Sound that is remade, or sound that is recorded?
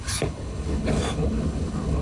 remade